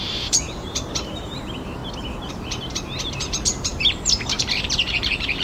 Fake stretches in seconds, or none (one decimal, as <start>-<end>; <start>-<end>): 0.0-1.8; 2.3-5.4